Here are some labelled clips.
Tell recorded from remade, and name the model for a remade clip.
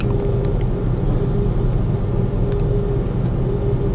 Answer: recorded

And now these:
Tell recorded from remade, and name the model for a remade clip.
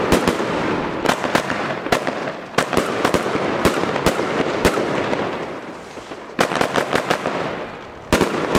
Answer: recorded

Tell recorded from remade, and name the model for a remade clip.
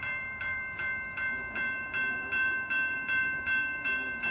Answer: remade, vocoder, BigVGAN v2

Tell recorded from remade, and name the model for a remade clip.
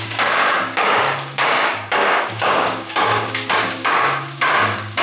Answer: remade, codec, DAC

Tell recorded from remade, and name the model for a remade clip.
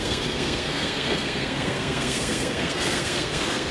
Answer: remade, codec, SNAC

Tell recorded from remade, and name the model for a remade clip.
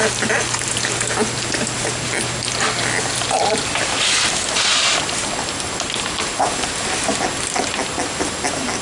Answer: recorded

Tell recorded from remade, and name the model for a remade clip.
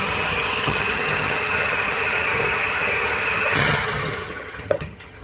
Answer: remade, vocoder, HiFi-GAN